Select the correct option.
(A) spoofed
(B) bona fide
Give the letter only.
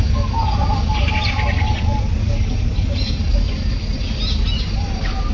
B